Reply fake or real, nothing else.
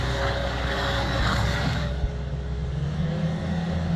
fake